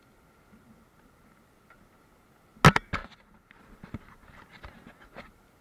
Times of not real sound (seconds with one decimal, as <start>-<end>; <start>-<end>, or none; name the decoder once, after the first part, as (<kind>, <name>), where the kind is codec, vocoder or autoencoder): none